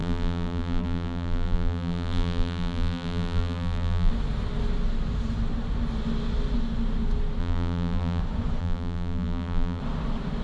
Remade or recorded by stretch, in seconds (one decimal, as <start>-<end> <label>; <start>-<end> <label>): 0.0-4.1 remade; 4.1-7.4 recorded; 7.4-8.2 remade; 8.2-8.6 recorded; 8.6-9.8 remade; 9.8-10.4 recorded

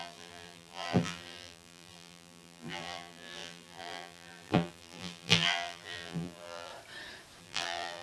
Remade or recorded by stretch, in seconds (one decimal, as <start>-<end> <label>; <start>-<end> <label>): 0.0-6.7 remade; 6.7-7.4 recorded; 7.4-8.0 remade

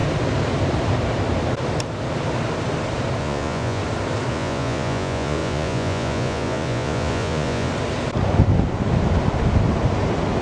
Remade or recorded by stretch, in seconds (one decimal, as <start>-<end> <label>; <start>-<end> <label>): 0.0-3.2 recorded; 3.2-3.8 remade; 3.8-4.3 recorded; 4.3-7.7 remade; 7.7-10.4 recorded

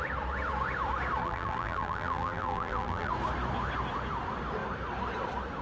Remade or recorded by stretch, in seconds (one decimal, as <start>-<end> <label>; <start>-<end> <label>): 0.0-1.2 recorded; 1.2-3.1 remade; 3.1-5.6 recorded

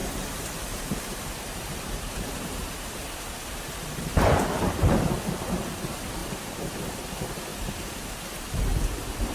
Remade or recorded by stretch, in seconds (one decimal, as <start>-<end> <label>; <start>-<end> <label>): 0.0-5.1 remade; 5.1-6.2 recorded; 6.2-6.8 remade; 6.8-9.3 recorded